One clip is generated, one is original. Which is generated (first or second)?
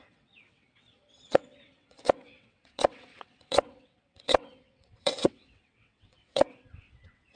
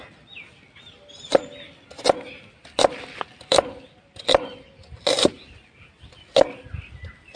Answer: first